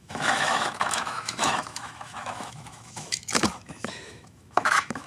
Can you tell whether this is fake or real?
fake